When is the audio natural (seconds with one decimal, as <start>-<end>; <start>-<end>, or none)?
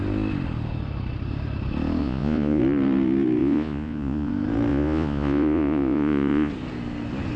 0.0-2.0; 2.6-3.4; 4.3-4.7; 6.5-7.4